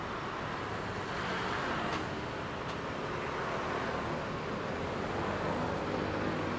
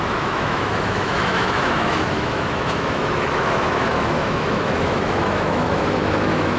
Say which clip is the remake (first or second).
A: second